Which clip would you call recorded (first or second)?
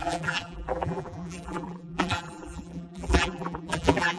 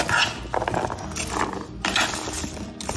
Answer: second